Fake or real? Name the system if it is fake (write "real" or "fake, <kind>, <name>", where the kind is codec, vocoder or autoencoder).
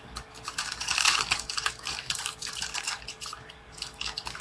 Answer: fake, codec, DAC